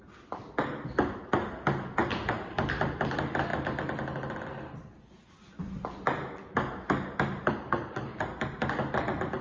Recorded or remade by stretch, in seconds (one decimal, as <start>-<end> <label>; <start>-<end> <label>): 0.0-8.1 recorded; 8.1-9.4 remade